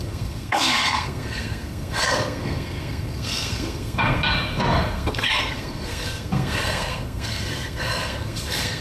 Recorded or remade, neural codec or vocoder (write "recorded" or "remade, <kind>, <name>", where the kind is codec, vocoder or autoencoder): remade, codec, SNAC